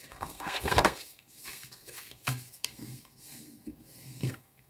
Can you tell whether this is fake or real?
fake